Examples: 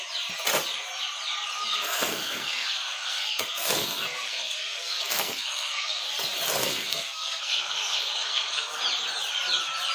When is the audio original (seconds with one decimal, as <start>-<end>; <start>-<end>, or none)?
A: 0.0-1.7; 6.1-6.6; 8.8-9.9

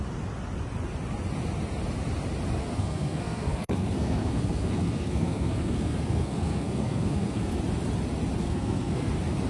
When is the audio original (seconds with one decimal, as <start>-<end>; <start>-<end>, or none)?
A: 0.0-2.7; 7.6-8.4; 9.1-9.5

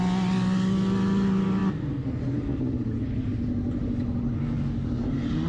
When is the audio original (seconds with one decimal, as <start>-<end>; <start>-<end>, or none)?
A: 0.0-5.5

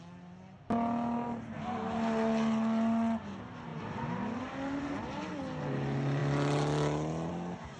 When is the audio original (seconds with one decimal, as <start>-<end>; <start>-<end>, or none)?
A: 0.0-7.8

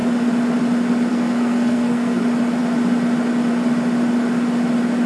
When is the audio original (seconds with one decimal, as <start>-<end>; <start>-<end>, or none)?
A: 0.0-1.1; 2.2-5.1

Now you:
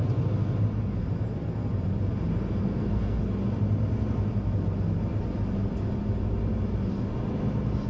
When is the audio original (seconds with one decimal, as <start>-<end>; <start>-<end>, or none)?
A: 0.0-2.6; 3.2-7.9

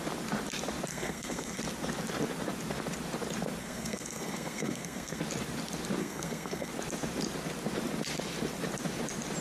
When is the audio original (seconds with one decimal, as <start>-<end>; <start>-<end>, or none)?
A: 0.0-0.9; 1.6-3.6; 5.2-6.0; 6.7-9.4